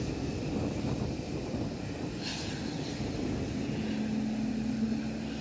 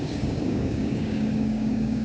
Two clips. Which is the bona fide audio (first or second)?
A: first